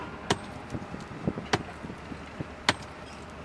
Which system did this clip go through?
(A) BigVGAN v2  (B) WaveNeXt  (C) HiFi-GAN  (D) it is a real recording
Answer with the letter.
D